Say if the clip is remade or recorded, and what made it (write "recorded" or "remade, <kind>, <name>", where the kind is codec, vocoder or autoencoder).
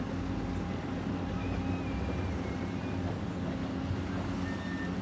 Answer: recorded